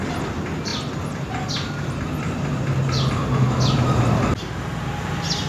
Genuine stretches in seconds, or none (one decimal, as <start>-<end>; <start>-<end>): 0.0-5.5